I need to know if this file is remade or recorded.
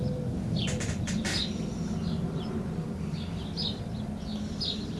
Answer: recorded